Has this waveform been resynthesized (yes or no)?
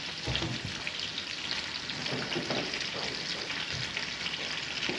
no